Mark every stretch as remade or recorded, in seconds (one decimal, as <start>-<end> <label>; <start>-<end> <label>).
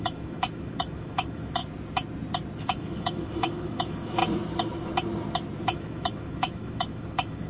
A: 0.0-1.6 remade; 1.6-2.6 recorded; 2.6-4.2 remade; 4.2-5.6 recorded; 5.6-7.5 remade